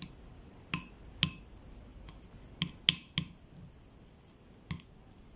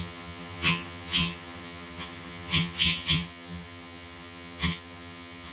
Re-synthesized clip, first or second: second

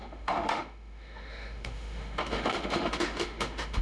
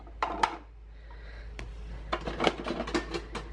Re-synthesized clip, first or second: first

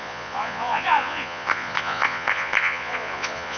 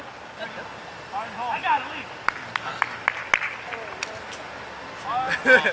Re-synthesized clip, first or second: first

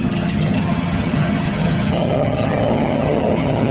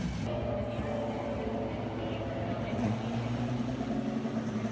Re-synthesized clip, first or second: first